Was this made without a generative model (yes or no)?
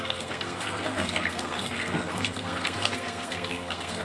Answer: no